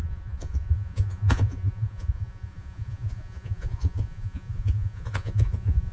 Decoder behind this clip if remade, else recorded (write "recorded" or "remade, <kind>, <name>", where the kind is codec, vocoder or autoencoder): remade, vocoder, Vocos